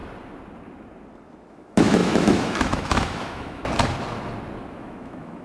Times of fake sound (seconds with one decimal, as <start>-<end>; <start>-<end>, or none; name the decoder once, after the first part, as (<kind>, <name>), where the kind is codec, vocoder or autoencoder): 1.5-3.6 (autoencoder, DAC-VAE); 4.7-5.4